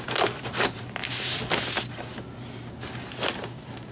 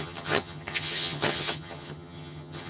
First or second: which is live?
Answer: first